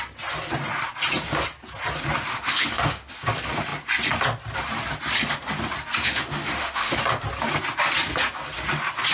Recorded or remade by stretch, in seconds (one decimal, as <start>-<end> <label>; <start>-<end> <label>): 0.0-2.3 recorded; 2.3-3.1 remade; 3.1-6.0 recorded; 6.0-7.0 remade; 7.0-9.1 recorded